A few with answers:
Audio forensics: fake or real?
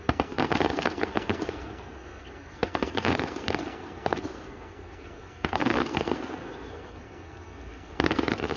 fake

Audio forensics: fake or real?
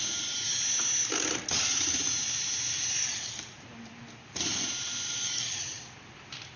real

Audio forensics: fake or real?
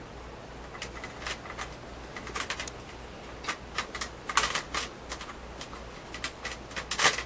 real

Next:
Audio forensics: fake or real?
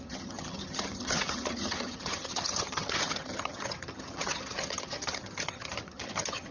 fake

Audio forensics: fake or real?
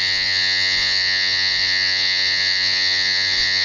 fake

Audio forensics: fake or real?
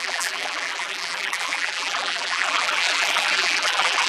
fake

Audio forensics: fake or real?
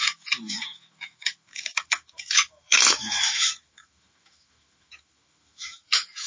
fake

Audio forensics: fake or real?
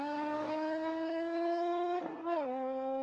fake